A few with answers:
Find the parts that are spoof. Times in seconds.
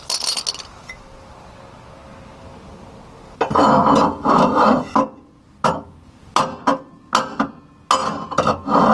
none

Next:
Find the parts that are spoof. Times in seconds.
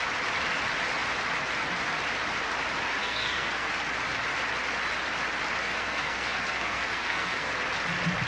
3.0-3.7 (codec, SNAC); 5.6-7.5